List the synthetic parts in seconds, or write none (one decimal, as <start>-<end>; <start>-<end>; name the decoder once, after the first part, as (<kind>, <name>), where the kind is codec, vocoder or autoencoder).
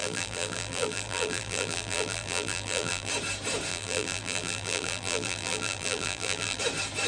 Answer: 0.0-3.1 (vocoder, BigVGAN v2); 3.7-6.6